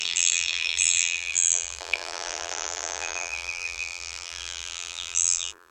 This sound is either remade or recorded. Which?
remade